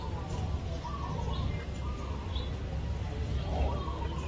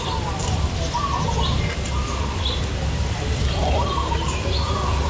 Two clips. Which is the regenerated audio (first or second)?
second